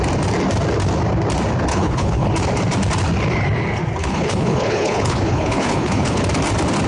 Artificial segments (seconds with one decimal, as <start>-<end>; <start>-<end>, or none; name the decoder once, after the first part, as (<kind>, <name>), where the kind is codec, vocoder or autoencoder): 1.7-2.3 (codec, HILCodec); 4.0-6.2

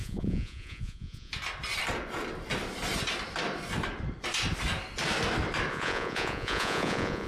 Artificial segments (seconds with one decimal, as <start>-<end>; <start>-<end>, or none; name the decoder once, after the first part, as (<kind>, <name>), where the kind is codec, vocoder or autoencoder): 0.0-1.3 (vocoder, Vocos); 5.7-7.3

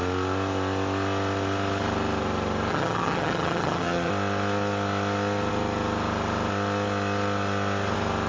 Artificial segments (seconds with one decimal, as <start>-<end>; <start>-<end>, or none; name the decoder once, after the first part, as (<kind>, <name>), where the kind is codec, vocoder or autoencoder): 2.7-4.1 (vocoder, HiFi-GAN)

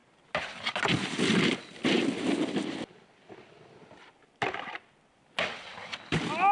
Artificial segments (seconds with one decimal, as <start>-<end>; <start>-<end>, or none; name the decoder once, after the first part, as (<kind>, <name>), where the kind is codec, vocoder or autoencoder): none

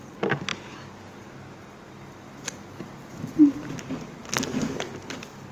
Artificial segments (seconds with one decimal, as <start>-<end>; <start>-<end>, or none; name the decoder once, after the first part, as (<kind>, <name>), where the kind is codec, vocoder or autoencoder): 0.5-3.8 (vocoder, BigVGAN v2)

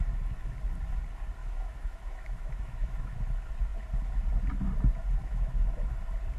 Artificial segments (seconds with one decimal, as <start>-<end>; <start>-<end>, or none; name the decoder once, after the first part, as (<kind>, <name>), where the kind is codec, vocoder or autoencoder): 1.4-3.2 (autoencoder, DAC-VAE); 5.2-5.9

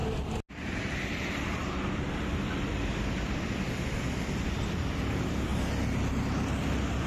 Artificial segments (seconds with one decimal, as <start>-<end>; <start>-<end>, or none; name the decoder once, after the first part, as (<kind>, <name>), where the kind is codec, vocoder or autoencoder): 0.5-1.6 (vocoder, BigVGAN v2); 2.7-5.5; 6.6-7.1

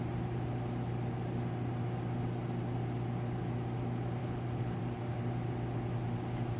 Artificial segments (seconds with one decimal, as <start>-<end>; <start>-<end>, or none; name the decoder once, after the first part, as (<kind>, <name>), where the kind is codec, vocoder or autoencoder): 4.2-4.8 (codec, HILCodec)